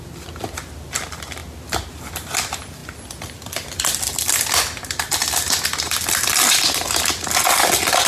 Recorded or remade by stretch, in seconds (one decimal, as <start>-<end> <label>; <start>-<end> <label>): 0.0-8.1 recorded